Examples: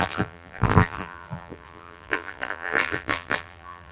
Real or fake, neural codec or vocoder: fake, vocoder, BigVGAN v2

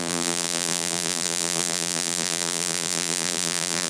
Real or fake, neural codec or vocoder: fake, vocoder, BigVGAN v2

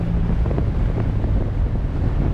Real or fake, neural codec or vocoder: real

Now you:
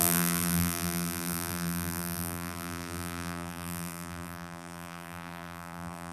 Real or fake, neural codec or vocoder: fake, vocoder, BigVGAN v2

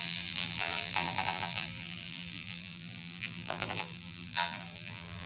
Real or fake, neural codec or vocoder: fake, vocoder, BigVGAN v2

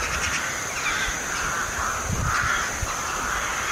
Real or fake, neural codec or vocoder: real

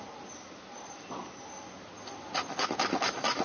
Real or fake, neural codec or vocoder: real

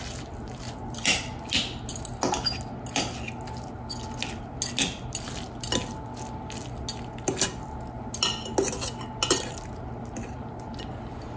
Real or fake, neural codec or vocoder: real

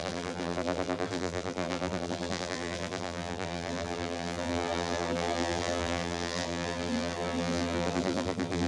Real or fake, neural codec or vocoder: fake, vocoder, BigVGAN v2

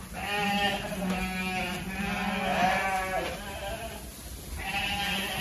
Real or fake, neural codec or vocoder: real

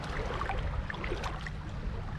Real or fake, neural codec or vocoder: real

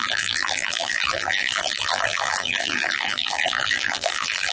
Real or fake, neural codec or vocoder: fake, vocoder, BigVGAN v2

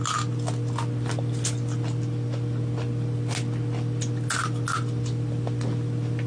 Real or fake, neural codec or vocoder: real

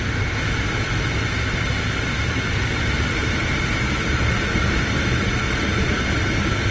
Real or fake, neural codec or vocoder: fake, vocoder, BigVGAN v2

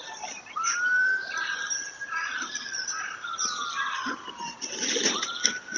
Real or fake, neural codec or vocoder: fake, vocoder, BigVGAN v2